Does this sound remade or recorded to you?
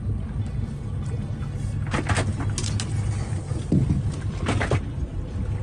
recorded